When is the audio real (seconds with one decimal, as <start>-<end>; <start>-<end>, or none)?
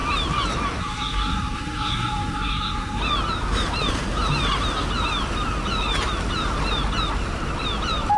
0.0-0.8; 3.0-8.2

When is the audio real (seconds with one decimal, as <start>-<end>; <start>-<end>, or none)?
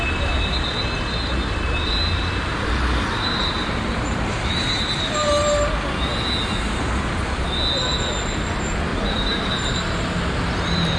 0.0-2.5; 4.7-8.9; 9.8-11.0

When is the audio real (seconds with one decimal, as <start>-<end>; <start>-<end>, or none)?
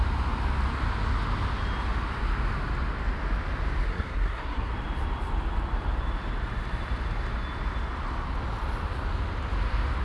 0.0-3.9; 4.7-10.0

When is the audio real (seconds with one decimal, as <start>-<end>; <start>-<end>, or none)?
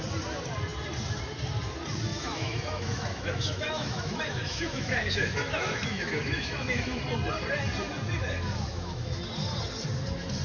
0.0-2.1; 7.0-8.7; 9.2-10.4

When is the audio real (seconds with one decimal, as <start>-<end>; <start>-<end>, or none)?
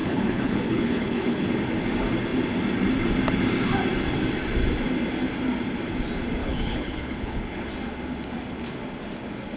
1.6-6.4; 7.7-9.6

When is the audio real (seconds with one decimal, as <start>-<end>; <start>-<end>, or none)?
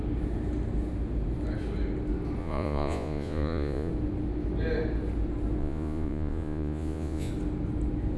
0.0-2.4; 3.9-5.6; 7.3-8.2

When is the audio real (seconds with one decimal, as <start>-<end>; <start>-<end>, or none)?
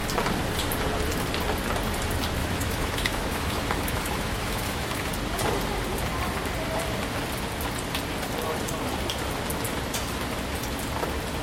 0.0-2.4; 5.1-11.4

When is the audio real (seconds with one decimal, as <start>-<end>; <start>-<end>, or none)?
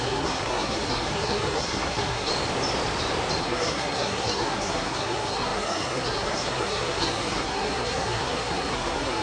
2.3-3.4